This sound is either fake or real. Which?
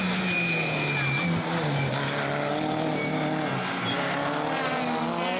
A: real